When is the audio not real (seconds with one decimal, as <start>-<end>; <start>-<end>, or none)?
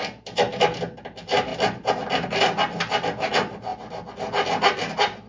none